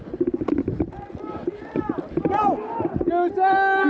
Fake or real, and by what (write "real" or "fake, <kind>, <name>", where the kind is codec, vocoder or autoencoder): real